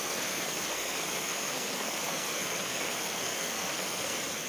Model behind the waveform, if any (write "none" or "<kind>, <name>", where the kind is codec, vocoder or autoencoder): codec, SNAC